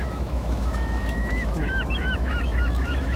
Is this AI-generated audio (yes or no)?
yes